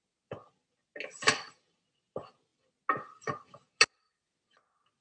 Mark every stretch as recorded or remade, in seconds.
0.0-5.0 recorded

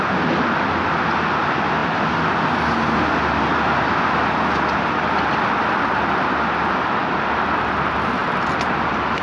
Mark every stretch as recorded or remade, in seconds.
0.0-9.2 recorded

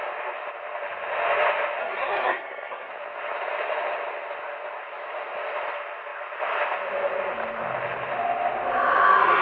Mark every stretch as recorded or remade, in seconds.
0.0-1.8 recorded; 1.8-2.9 remade; 2.9-9.4 recorded